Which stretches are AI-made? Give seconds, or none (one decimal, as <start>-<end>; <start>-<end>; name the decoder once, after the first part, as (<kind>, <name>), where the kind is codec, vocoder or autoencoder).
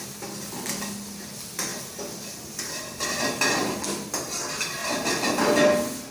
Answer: none